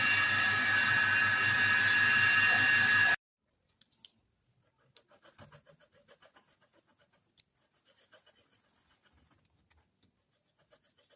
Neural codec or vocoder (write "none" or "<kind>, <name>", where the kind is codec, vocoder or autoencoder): none